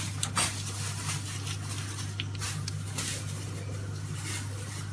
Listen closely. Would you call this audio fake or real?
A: real